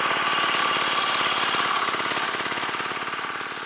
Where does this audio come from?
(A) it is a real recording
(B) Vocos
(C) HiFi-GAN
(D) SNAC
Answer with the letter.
A